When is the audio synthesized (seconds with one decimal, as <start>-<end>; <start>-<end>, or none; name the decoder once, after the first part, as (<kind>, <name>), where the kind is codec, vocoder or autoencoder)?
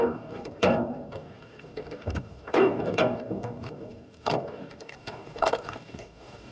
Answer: 0.0-6.5 (codec, DAC)